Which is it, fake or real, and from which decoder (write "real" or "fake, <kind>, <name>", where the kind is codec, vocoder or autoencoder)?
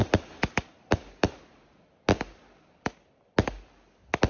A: real